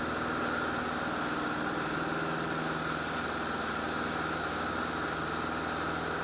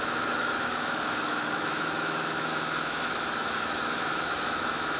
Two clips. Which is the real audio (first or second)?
first